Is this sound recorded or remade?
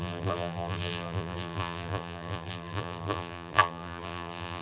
remade